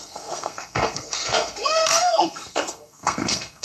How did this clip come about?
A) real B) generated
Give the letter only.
B